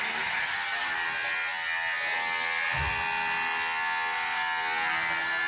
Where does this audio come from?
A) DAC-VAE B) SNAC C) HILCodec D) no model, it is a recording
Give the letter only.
D